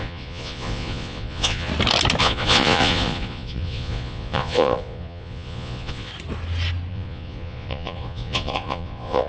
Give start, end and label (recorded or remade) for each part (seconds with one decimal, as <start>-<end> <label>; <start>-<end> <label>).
0.0-1.7 remade; 1.7-2.2 recorded; 2.2-6.1 remade; 6.1-6.9 recorded; 6.9-9.3 remade